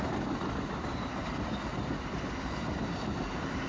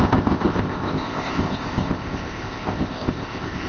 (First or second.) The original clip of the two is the first